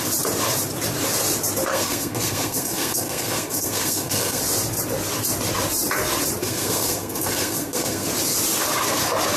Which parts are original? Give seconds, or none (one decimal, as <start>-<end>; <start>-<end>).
0.0-1.7; 4.4-6.4; 8.1-9.4

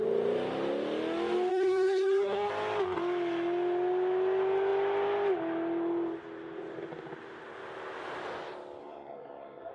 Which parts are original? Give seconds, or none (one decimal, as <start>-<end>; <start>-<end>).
0.0-1.5; 2.5-8.8